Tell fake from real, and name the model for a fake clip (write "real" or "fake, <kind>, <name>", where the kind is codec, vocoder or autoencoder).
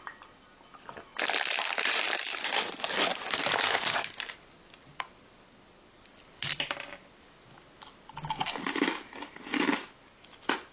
real